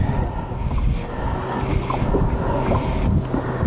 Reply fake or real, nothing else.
real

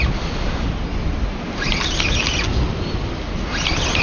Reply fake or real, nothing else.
real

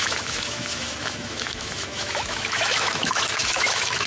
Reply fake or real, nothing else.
fake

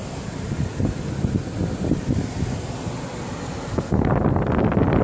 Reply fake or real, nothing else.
real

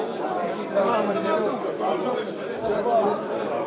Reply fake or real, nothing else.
real